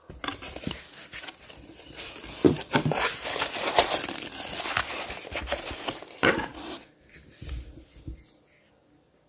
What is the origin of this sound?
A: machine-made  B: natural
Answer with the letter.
B